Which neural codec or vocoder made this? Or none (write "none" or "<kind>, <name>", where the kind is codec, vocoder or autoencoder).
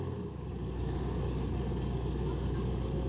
codec, DAC